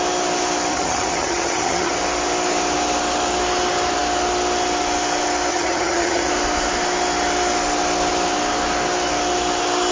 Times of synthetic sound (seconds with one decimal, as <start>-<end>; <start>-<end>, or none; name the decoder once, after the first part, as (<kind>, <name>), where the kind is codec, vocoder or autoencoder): 0.7-1.9 (vocoder, HiFi-GAN); 5.5-6.3

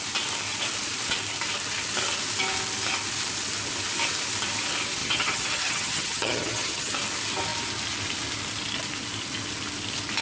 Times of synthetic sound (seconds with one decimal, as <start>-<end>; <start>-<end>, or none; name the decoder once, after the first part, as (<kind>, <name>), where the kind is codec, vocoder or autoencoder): 5.0-6.9 (vocoder, HiFi-GAN)